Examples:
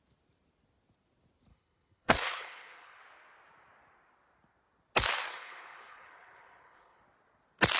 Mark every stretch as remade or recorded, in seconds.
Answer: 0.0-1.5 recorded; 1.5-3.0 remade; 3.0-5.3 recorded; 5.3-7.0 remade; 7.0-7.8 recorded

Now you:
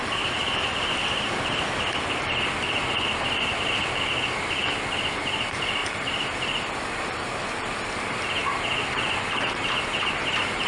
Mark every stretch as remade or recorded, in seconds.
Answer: 0.0-10.7 recorded

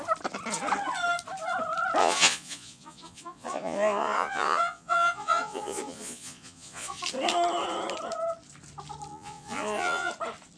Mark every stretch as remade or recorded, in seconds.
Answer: 0.0-2.0 recorded; 2.0-7.0 remade; 7.0-9.1 recorded; 9.1-10.1 remade; 10.1-10.6 recorded

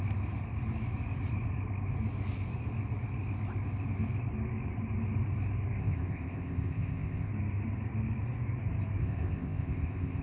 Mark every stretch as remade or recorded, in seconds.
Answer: 0.0-5.8 recorded; 5.8-7.3 remade; 7.3-9.0 recorded; 9.0-10.2 remade